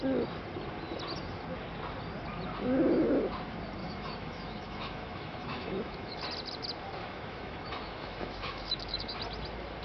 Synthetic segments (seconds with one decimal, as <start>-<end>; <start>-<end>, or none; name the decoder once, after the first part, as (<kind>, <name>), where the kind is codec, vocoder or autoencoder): 3.8-6.2 (autoencoder, DAC-VAE); 7.0-9.1